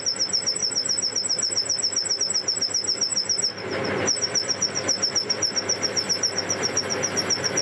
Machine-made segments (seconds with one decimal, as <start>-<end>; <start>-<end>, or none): none